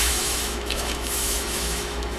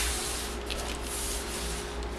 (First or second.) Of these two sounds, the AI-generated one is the first